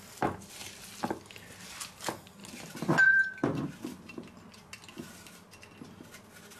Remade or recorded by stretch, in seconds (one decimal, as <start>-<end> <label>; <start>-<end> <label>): 0.0-6.6 recorded